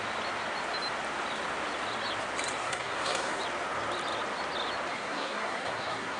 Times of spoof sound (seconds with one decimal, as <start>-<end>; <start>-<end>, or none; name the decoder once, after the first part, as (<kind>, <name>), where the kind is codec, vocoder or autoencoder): 2.6-3.4 (codec, SNAC); 4.9-6.2